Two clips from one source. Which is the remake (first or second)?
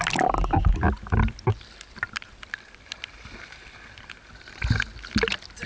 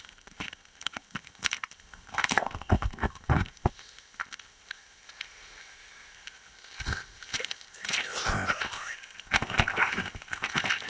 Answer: second